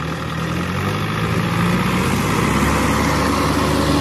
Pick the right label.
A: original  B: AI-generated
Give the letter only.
A